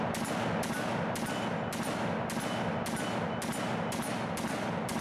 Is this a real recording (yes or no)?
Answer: yes